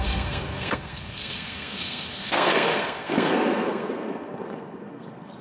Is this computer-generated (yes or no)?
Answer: yes